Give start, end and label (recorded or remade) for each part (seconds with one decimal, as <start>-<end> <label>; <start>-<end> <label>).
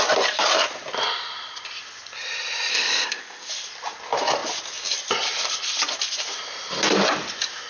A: 0.0-2.7 recorded; 2.7-3.5 remade; 3.5-7.7 recorded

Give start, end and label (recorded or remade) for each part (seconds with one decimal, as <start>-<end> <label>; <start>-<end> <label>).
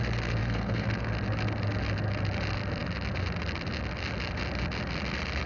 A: 0.0-0.4 recorded; 0.4-1.1 remade; 1.1-5.5 recorded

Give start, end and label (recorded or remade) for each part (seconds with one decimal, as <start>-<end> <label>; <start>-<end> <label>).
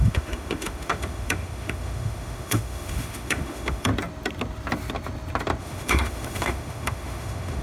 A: 0.0-3.9 remade; 3.9-5.6 recorded; 5.6-7.6 remade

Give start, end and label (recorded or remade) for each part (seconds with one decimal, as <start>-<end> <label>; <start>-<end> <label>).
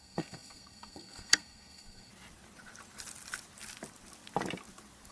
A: 0.0-2.1 remade; 2.1-5.1 recorded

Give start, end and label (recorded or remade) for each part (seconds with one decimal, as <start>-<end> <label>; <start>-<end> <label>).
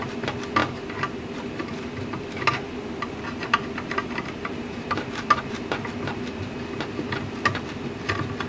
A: 0.0-0.6 recorded; 0.6-2.5 remade; 2.5-8.5 recorded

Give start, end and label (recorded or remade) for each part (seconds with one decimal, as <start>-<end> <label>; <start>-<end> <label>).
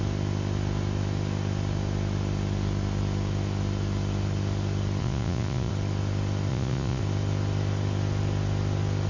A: 0.0-5.0 recorded; 5.0-5.7 remade; 5.7-6.5 recorded; 6.5-7.0 remade; 7.0-9.1 recorded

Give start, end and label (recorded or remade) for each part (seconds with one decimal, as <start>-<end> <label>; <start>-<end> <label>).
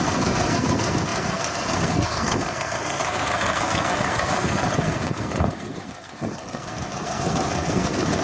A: 0.0-8.2 remade